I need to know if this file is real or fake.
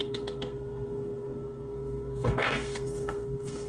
fake